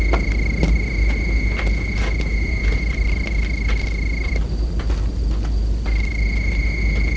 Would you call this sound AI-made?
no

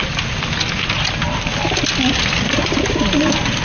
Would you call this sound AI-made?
no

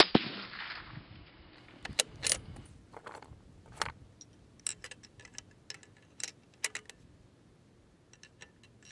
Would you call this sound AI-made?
no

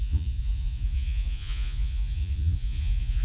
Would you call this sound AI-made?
yes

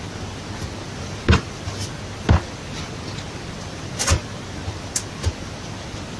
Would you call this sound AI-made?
no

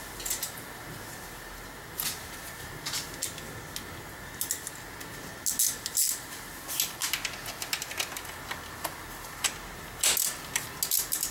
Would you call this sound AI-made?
no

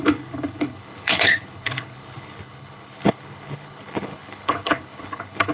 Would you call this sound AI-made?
yes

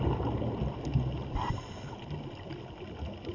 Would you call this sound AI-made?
no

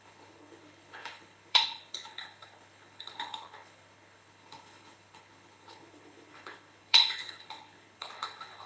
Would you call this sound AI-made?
yes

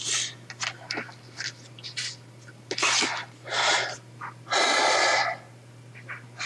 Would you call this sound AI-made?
no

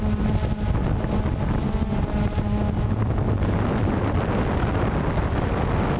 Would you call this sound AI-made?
no